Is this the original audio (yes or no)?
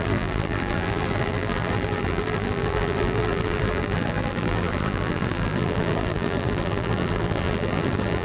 no